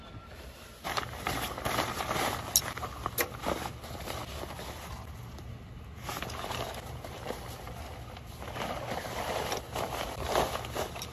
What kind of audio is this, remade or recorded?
recorded